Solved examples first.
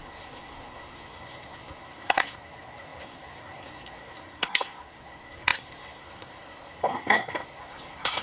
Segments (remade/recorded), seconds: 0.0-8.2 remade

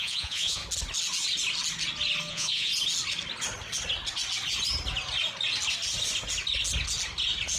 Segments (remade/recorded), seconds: 0.0-0.6 remade; 0.6-2.3 recorded; 2.3-2.7 remade; 2.7-7.6 recorded

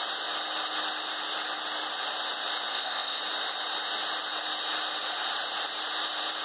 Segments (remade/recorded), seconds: 0.0-2.7 recorded; 2.7-3.2 remade; 3.2-6.4 recorded

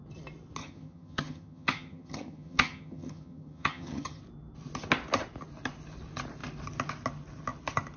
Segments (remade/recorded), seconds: 0.0-0.6 recorded; 0.6-4.2 remade; 4.2-8.0 recorded

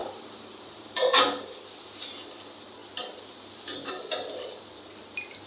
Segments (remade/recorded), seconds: 0.0-1.6 remade; 1.6-5.5 recorded